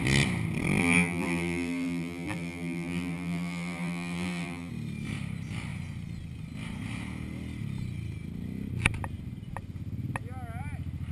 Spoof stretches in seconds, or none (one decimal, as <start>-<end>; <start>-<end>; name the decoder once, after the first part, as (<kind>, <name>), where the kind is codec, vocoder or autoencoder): 0.8-4.7 (vocoder, BigVGAN v2)